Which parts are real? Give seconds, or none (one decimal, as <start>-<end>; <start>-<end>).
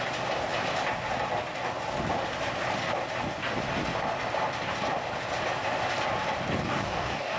0.0-6.6